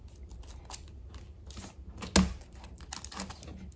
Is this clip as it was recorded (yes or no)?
yes